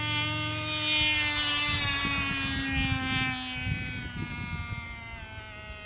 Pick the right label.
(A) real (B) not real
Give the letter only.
A